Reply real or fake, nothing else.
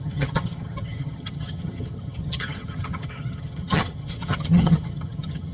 fake